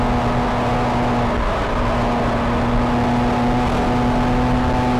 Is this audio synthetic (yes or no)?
no